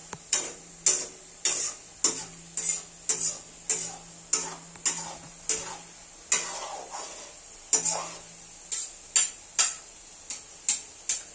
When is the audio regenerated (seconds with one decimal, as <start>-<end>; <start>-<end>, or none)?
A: 0.0-0.7